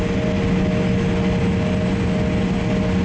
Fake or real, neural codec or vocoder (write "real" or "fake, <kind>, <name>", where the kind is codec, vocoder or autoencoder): real